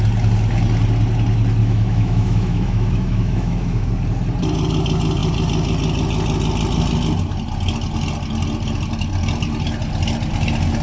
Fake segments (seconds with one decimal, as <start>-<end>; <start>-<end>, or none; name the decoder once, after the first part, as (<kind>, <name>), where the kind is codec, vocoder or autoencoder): 1.6-3.9 (autoencoder, DAC-VAE)